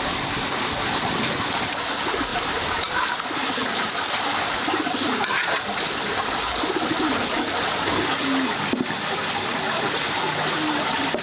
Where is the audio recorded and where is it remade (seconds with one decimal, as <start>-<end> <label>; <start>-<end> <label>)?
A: 0.0-2.3 recorded; 2.3-3.2 remade; 3.2-11.2 recorded